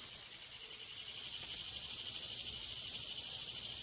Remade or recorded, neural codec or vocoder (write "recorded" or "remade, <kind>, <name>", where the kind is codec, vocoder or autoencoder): remade, vocoder, Vocos